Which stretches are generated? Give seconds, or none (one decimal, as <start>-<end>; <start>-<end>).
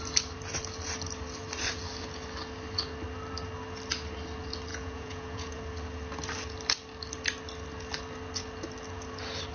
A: 4.7-5.6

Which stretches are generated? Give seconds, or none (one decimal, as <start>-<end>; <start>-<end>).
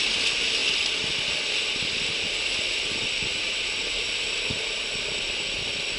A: none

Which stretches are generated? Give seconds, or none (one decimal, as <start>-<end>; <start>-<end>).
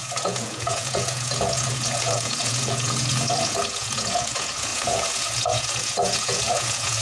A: 0.0-7.0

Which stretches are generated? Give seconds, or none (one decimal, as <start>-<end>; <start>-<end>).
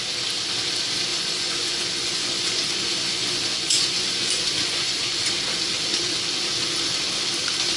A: 1.1-5.3